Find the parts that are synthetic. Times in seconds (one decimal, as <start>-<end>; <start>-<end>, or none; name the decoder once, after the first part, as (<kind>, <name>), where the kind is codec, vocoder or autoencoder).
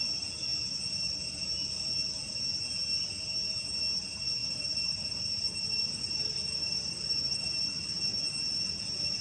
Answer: 4.4-7.5 (vocoder, BigVGAN v2)